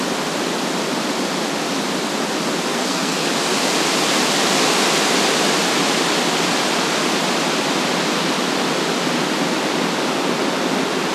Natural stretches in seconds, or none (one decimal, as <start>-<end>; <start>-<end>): 0.0-2.7; 3.3-11.1